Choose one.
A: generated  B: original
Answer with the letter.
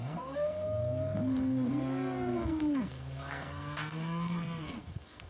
A